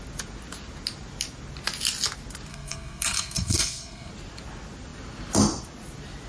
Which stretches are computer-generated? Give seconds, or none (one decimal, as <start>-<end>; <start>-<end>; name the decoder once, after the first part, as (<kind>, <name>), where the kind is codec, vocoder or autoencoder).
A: 2.5-4.1 (codec, SNAC)